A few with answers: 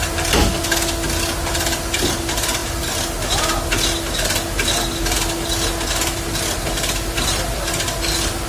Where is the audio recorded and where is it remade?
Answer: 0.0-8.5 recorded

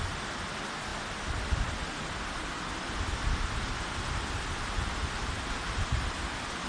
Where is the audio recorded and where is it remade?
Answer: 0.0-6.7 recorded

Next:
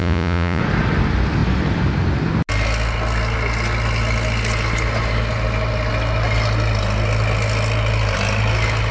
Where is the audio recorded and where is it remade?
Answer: 0.0-0.6 remade; 0.6-8.9 recorded